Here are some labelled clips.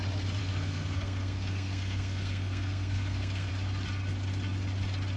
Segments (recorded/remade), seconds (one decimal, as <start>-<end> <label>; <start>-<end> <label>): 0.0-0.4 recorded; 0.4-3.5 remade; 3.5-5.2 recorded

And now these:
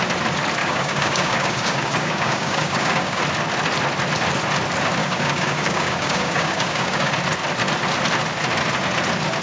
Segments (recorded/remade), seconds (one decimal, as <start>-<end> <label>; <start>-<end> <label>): 0.0-0.6 recorded; 0.6-3.2 remade; 3.2-5.0 recorded; 5.0-7.1 remade; 7.1-9.4 recorded

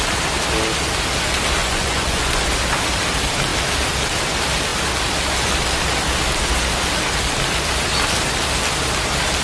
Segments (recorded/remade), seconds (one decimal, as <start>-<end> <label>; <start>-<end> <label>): 0.0-1.6 recorded; 1.6-2.4 remade; 2.4-9.4 recorded